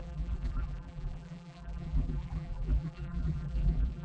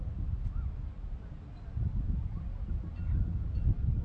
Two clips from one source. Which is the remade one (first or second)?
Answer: first